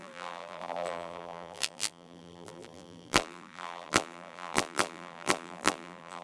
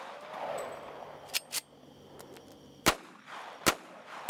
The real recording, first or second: second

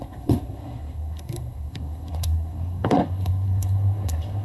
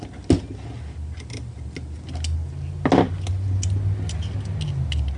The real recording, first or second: second